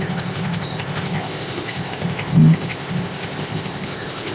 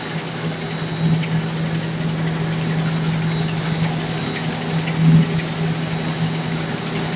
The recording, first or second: second